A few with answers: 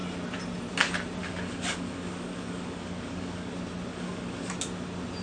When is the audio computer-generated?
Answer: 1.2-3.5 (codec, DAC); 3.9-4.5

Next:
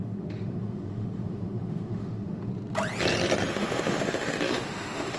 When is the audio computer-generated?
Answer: 0.0-2.5 (autoencoder, DAC-VAE); 3.5-5.2

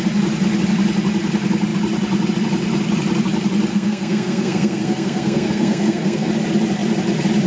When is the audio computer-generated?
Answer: 3.7-6.3 (codec, SNAC)

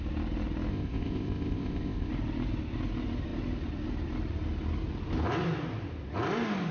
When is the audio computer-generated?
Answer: 0.7-2.1 (codec, ZipCodec)